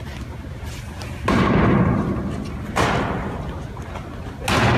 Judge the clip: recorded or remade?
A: recorded